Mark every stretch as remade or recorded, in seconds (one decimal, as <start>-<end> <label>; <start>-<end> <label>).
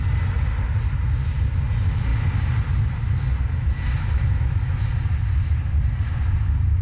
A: 0.0-6.8 recorded